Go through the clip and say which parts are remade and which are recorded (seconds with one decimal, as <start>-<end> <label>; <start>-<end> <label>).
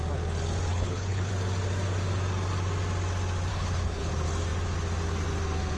0.0-0.7 recorded; 0.7-1.3 remade; 1.3-3.5 recorded; 3.5-4.1 remade; 4.1-5.8 recorded